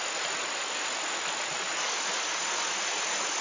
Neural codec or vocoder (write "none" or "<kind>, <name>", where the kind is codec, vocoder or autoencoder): none